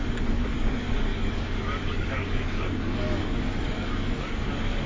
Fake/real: fake